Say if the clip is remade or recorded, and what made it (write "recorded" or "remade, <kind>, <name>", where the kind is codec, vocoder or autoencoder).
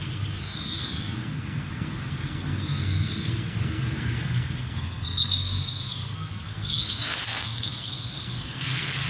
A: remade, codec, SNAC